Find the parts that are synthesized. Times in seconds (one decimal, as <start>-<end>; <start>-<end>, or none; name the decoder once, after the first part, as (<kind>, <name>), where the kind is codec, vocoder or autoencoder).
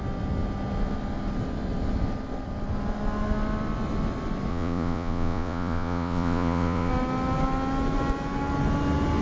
4.5-6.9 (vocoder, Vocos)